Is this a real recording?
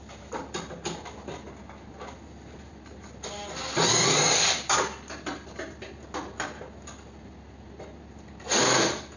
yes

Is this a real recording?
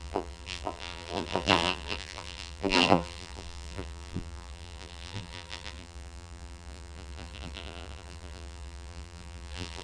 no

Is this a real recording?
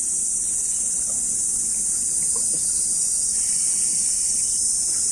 yes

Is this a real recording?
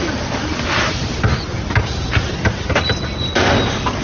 yes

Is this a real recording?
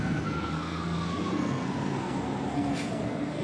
no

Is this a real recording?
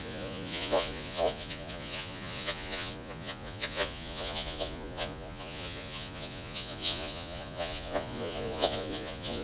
no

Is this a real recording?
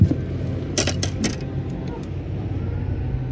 yes